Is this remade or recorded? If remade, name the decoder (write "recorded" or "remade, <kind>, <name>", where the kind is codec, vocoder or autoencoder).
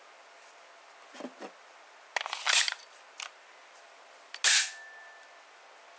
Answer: recorded